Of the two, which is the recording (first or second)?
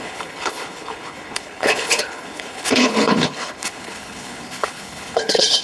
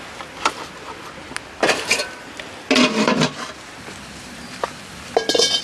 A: second